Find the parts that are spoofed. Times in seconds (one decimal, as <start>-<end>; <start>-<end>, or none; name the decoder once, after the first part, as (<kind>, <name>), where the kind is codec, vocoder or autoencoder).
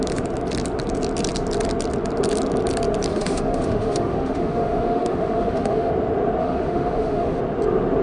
3.1-5.9 (autoencoder, DAC-VAE); 6.4-7.4